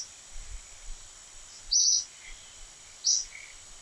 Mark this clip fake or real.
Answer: real